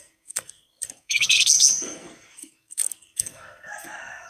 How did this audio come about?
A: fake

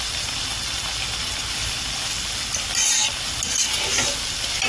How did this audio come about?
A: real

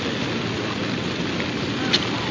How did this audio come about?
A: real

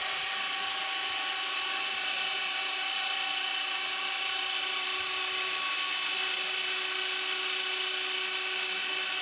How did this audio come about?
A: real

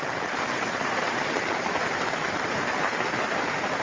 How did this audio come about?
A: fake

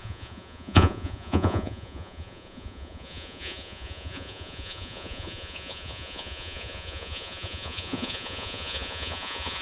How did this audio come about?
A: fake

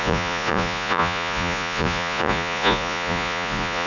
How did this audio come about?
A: fake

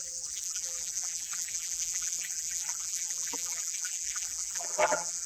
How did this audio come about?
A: fake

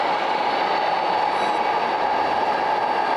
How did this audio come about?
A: real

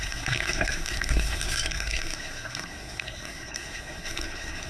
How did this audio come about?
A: fake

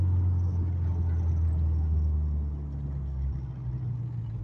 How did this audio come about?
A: real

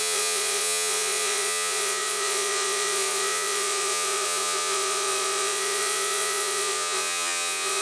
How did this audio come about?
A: fake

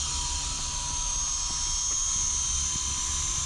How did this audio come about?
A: real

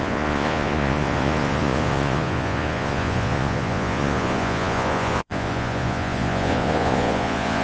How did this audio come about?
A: fake